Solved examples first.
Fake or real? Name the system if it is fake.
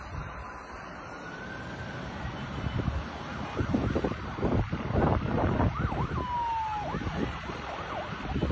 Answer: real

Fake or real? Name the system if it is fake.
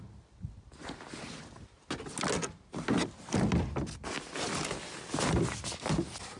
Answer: real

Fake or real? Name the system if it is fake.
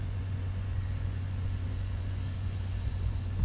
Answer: fake, vocoder, Vocos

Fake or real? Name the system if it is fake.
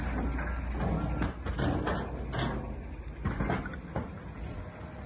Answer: real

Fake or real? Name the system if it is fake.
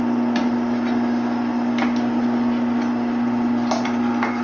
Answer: real